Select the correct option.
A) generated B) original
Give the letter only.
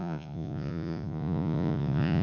A